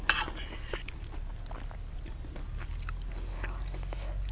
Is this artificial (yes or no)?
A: no